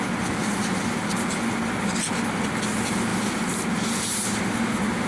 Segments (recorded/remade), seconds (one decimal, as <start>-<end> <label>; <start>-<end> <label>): 0.0-3.1 recorded; 3.1-4.4 remade; 4.4-5.1 recorded